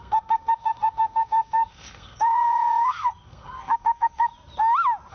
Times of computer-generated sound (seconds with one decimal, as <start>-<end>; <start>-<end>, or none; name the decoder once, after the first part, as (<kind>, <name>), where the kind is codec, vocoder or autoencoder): 0.0-4.3 (codec, SNAC)